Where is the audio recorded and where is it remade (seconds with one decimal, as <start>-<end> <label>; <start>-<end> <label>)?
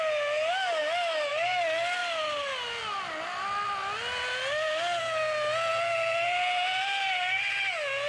0.0-8.1 recorded